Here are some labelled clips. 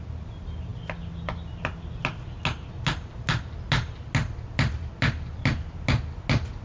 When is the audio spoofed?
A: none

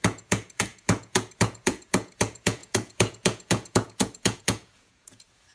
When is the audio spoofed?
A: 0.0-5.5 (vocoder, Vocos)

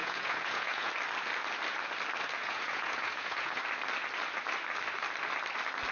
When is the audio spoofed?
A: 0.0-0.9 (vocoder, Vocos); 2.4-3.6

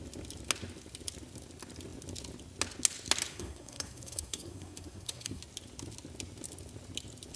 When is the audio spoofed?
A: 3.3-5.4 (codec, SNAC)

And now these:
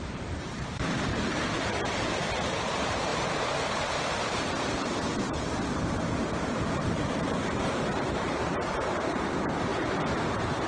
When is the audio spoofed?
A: 0.0-10.7 (vocoder, BigVGAN v2)